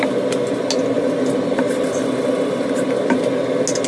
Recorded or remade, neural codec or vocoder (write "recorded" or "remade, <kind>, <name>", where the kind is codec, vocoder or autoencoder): recorded